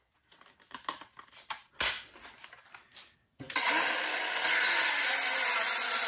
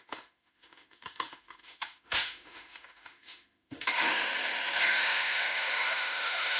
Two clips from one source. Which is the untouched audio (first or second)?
first